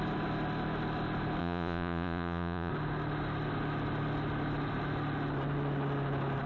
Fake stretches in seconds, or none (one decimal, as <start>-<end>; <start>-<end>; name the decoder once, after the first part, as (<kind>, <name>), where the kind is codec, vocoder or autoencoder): 1.4-2.7 (vocoder, Vocos)